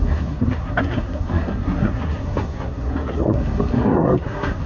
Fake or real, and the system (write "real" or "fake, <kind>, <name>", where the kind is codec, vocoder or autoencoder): fake, codec, SNAC